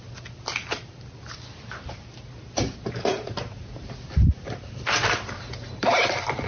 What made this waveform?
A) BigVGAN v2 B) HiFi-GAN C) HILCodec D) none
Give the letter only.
D